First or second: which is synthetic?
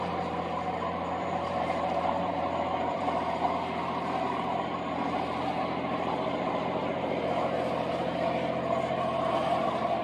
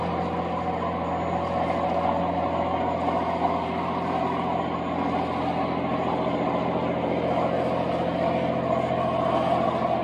first